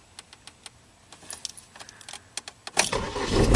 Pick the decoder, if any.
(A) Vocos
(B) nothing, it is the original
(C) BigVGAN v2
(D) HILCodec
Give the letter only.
B